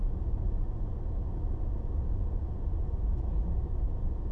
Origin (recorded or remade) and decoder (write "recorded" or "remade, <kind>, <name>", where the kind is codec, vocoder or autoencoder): remade, vocoder, Vocos